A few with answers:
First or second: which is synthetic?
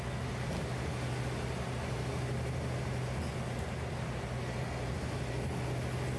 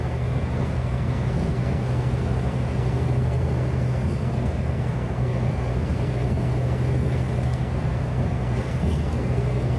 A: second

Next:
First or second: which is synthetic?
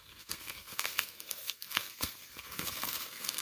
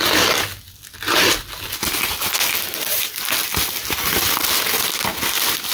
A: first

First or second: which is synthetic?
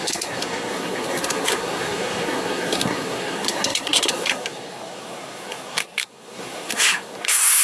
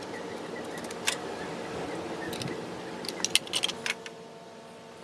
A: first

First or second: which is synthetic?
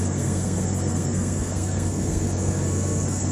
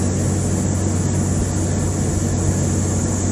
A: first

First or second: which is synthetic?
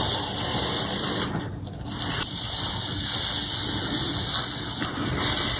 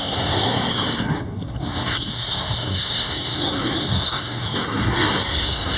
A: second